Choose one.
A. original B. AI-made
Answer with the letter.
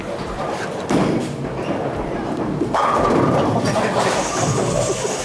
B